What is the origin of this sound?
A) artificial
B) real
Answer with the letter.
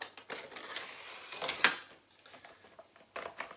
B